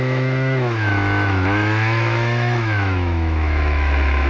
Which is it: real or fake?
fake